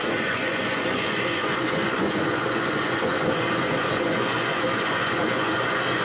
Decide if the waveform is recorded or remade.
remade